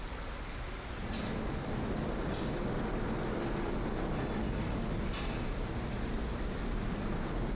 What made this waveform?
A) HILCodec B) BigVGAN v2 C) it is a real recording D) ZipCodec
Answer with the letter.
C